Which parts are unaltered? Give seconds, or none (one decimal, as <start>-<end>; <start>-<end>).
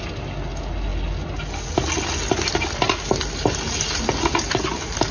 0.0-5.1